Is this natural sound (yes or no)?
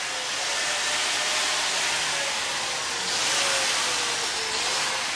yes